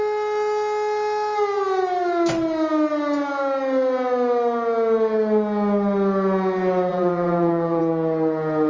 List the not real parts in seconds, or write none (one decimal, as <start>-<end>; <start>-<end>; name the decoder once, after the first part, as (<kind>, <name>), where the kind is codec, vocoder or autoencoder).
6.9-7.8 (vocoder, Vocos)